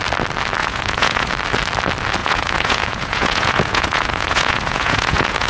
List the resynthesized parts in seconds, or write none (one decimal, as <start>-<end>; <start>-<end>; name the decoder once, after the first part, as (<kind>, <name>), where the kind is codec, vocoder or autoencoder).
0.6-1.3 (vocoder, Vocos); 2.2-5.5